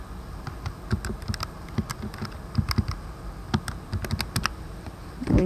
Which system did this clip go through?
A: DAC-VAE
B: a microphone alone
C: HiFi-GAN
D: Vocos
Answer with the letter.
B